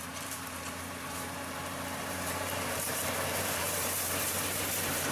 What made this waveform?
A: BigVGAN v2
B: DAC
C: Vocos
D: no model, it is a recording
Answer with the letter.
A